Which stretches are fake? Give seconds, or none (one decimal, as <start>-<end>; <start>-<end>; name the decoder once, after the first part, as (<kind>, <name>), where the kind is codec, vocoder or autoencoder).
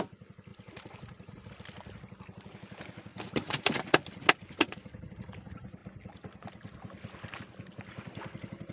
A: 0.5-1.5 (vocoder, BigVGAN v2); 3.1-4.0